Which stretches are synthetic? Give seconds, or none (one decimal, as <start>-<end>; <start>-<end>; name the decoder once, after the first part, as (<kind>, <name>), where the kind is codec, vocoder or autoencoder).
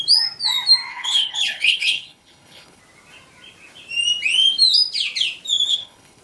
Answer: 0.9-2.8 (codec, HILCodec); 5.7-6.2